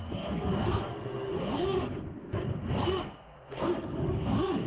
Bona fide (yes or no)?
no